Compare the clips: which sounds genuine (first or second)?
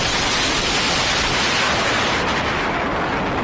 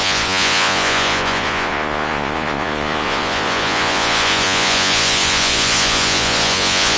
first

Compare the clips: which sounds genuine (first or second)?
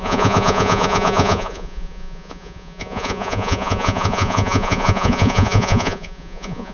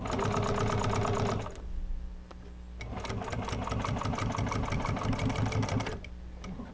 second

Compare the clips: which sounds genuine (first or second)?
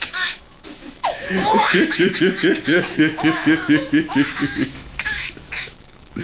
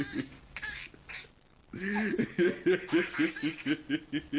second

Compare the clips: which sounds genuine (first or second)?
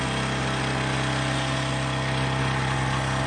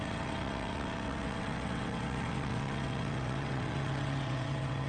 first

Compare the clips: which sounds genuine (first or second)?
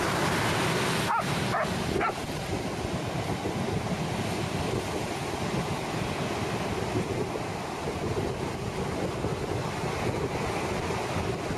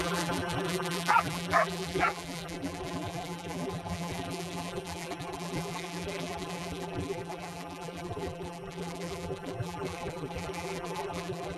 first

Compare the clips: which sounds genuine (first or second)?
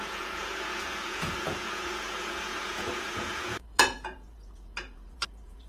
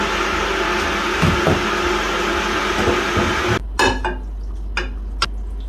second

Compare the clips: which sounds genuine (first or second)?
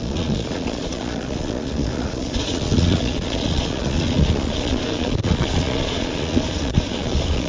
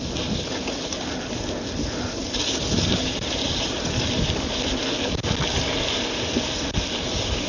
second